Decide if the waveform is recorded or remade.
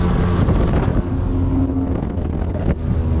remade